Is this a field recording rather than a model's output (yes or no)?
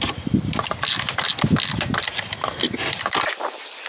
yes